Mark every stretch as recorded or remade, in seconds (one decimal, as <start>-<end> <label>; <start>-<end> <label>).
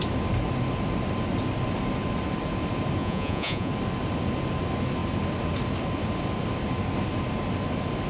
0.0-3.0 recorded; 3.0-3.7 remade; 3.7-8.1 recorded